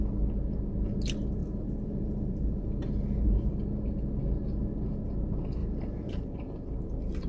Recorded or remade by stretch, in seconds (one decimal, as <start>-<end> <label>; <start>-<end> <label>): 0.0-1.4 recorded; 1.4-3.6 remade; 3.6-5.6 recorded; 5.6-6.1 remade; 6.1-7.3 recorded